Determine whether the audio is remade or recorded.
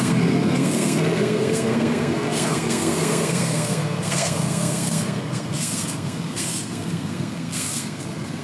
remade